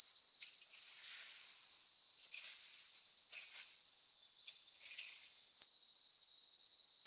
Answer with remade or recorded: recorded